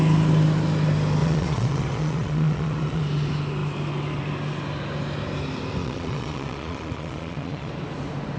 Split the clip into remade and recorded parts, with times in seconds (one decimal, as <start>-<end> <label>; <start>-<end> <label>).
0.0-1.2 recorded; 1.2-3.0 remade; 3.0-5.8 recorded; 5.8-7.7 remade; 7.7-8.4 recorded